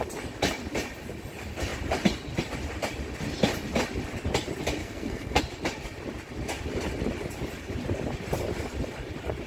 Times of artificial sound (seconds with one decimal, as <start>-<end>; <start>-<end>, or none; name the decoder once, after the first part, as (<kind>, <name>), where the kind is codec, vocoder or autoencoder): 4.8-5.4 (codec, SNAC)